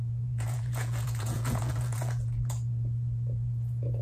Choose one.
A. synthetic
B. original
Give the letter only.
A